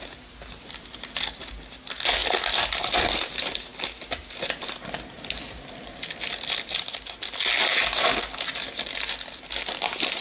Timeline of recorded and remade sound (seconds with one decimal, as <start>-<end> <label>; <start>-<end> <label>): 0.0-10.2 recorded